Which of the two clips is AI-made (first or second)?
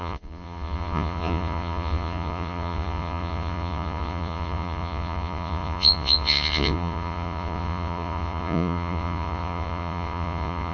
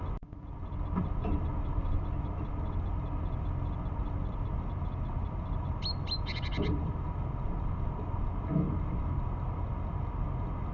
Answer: first